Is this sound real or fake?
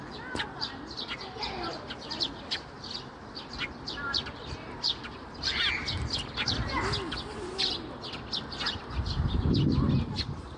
real